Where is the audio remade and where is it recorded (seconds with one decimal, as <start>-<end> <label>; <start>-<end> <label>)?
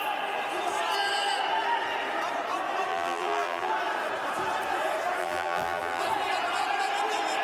0.0-2.9 recorded; 2.9-3.7 remade; 3.7-5.2 recorded; 5.2-6.0 remade; 6.0-7.4 recorded